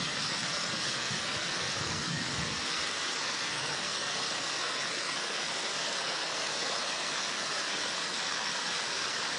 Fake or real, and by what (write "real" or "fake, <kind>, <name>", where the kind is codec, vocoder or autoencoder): fake, codec, SNAC